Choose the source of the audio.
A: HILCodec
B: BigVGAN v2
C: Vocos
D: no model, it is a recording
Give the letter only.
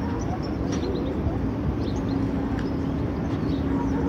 D